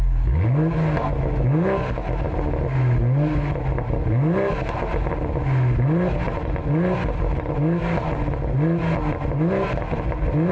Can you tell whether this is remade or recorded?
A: recorded